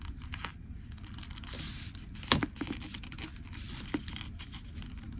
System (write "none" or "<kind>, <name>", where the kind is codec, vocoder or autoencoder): none